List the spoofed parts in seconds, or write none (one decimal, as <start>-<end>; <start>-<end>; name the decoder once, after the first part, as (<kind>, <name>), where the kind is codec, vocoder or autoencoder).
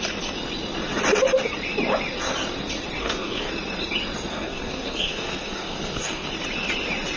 3.0-3.5 (codec, SNAC); 4.3-6.3